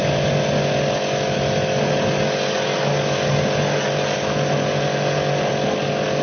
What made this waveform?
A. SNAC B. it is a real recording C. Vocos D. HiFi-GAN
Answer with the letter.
B